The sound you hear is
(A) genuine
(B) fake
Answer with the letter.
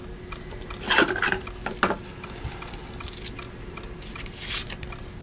A